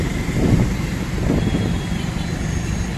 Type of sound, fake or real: fake